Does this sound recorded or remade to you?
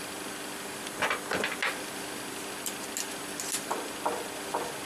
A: recorded